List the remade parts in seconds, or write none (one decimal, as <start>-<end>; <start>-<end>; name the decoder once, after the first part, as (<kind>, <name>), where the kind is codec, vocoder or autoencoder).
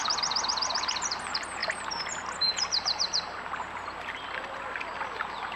0.0-5.6 (vocoder, BigVGAN v2)